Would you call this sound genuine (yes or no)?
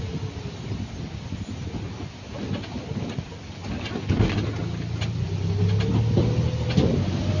yes